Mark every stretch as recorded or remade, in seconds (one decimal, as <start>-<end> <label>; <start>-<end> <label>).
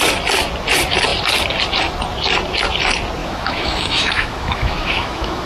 0.0-3.2 recorded; 3.2-5.5 remade